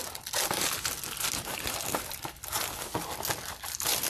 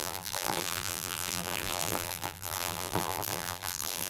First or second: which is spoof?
second